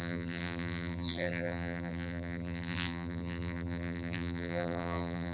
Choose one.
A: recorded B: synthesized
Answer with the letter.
B